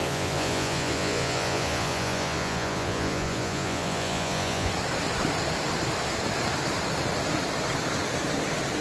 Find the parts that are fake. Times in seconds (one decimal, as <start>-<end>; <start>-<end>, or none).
0.0-4.7